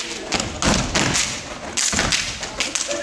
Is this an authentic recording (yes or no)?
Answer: yes